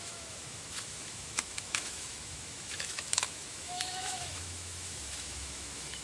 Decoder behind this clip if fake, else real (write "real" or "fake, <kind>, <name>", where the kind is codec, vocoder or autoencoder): fake, autoencoder, DAC-VAE